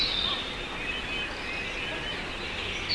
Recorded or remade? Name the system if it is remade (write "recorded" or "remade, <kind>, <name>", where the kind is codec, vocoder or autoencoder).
recorded